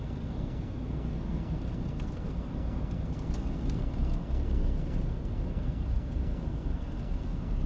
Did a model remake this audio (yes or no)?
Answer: yes